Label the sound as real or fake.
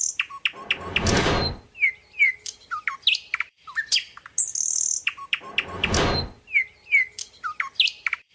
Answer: real